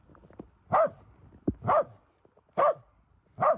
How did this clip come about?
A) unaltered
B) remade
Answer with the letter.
A